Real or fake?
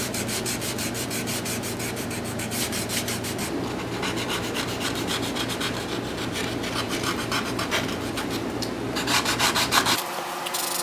fake